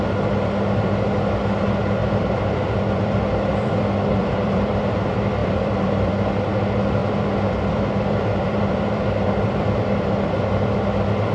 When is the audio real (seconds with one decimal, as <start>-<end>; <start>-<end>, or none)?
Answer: 0.0-2.0; 4.8-5.4; 6.1-7.0; 9.7-11.3